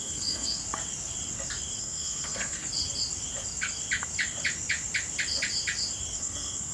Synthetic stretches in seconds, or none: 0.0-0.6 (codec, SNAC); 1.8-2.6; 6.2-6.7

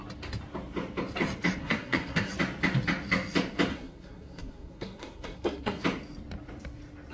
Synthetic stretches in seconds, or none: 1.6-2.3 (codec, SNAC); 3.7-5.8

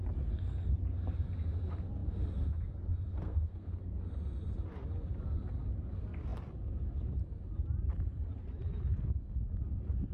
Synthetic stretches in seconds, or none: 3.1-3.7 (codec, SNAC)

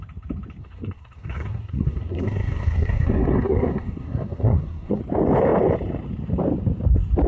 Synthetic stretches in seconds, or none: 0.6-5.0 (codec, SNAC)

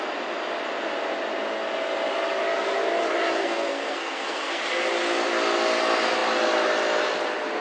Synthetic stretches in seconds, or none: 3.4-4.6 (codec, SNAC)

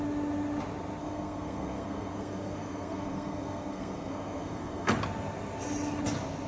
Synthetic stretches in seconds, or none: 1.0-4.9 (codec, SNAC)

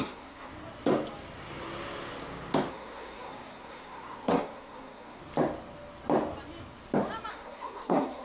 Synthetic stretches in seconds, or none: 0.0-0.5 (codec, SNAC); 2.7-5.2; 7.3-8.2

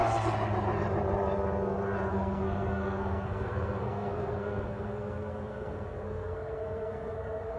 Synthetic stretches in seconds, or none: 2.1-7.6 (codec, SNAC)